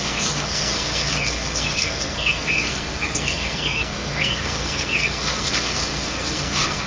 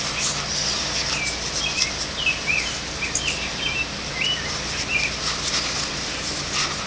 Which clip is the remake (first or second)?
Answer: first